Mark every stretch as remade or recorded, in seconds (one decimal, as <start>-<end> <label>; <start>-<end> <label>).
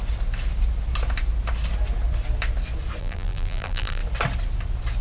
0.0-3.0 recorded; 3.0-4.0 remade; 4.0-5.0 recorded